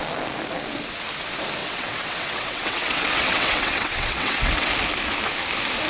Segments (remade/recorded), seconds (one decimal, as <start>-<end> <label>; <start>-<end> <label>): 0.0-1.6 recorded; 1.6-4.7 remade; 4.7-5.9 recorded